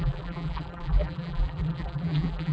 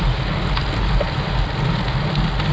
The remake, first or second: first